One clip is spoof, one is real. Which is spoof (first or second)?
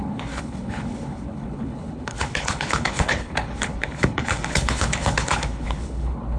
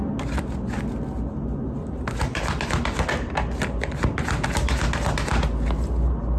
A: first